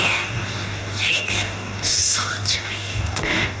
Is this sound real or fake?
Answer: fake